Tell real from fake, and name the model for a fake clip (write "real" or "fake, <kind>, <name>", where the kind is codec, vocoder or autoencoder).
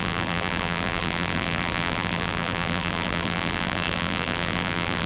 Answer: fake, vocoder, BigVGAN v2